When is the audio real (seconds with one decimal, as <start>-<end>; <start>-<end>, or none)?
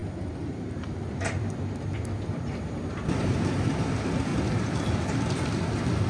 4.3-5.3